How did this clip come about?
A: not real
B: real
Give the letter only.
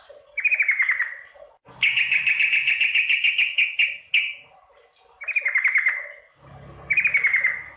B